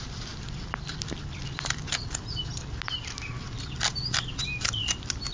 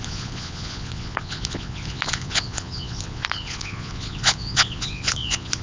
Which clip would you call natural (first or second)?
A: first